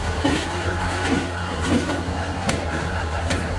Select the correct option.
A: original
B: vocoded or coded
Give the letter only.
B